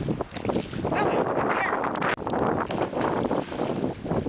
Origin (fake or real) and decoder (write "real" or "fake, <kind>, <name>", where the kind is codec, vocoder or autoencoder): real